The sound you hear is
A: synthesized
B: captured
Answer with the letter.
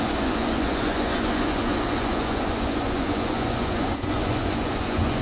A